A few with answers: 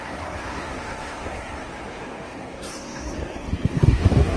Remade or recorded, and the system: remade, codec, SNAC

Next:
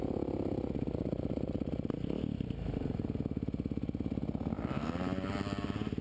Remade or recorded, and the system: recorded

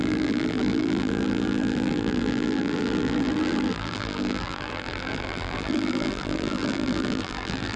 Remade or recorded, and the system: remade, vocoder, BigVGAN v2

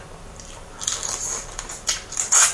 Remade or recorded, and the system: recorded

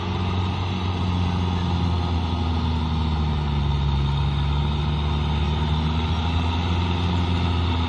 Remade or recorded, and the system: recorded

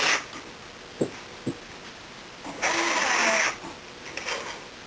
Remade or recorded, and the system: recorded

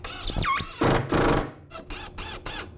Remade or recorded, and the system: recorded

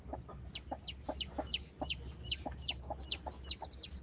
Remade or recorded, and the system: recorded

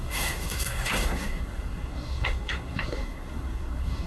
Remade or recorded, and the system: remade, codec, SNAC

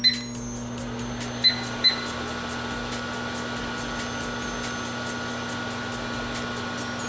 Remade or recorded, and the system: recorded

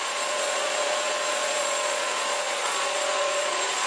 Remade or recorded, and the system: remade, vocoder, Vocos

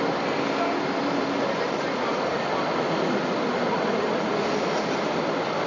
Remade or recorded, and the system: recorded